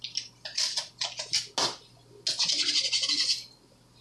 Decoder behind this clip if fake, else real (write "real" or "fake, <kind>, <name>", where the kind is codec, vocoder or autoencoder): real